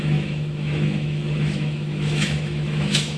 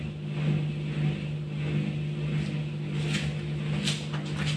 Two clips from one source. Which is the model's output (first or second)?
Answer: first